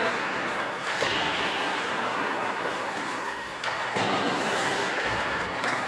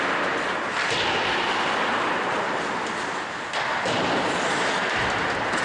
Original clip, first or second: second